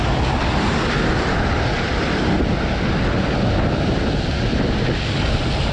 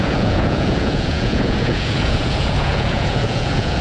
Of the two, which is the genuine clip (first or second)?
first